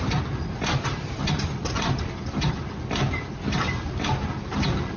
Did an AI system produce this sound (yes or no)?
no